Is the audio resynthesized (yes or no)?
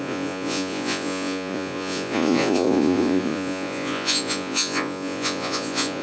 yes